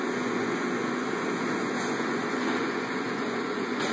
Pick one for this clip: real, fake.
fake